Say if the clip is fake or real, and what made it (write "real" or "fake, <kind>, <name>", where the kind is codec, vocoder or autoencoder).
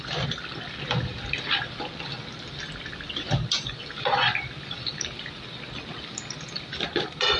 real